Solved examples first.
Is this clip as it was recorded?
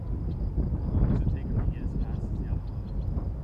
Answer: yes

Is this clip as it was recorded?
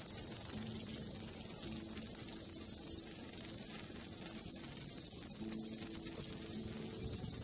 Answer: yes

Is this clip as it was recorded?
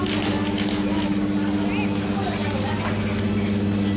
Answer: yes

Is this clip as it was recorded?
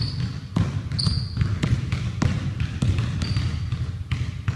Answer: yes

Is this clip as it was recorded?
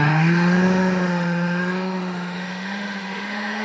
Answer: no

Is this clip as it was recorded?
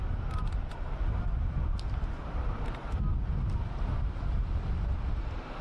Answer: yes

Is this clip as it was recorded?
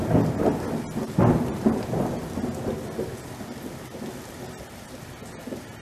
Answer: yes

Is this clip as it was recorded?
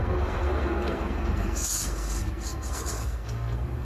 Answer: no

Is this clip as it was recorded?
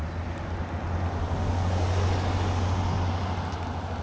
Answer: yes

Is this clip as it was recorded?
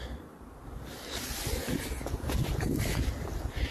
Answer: yes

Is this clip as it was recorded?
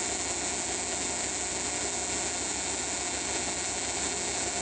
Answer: yes